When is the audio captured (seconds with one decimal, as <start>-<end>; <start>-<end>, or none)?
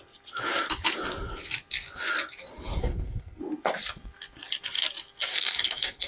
0.0-2.8; 3.4-5.3